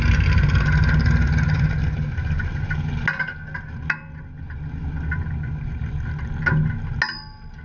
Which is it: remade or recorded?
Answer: recorded